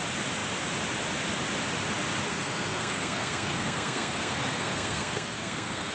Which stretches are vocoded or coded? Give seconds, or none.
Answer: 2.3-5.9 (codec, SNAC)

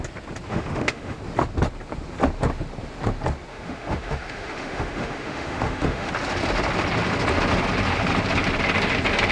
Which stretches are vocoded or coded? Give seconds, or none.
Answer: 0.5-1.2 (autoencoder, DAC-VAE); 3.5-6.1

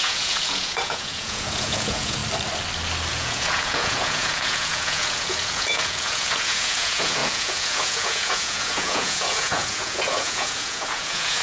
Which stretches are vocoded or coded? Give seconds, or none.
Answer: 0.0-2.2 (vocoder, Vocos); 3.1-11.4

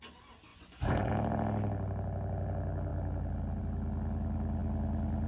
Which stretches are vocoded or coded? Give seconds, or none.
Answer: 0.5-1.1 (vocoder, Vocos)